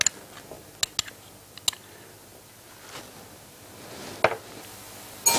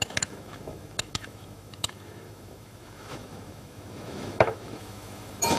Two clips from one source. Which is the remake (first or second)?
second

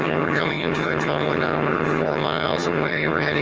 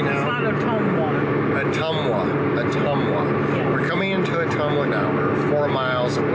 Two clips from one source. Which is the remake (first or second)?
first